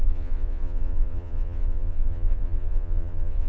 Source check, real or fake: fake